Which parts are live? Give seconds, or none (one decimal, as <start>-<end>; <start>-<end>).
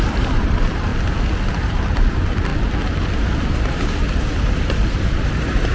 0.9-1.6; 2.5-3.5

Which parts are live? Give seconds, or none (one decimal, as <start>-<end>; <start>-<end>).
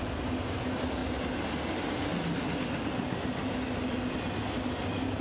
0.0-5.2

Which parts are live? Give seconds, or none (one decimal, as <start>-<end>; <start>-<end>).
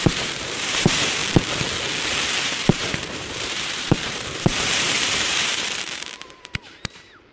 1.2-2.4